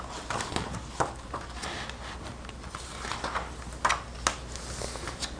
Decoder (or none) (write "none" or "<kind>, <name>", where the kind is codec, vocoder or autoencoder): none